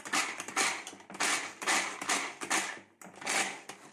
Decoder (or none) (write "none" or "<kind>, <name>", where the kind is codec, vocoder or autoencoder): none